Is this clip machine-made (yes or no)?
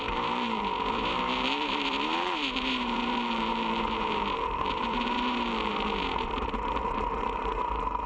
yes